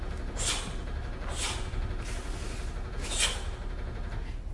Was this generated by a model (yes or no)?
no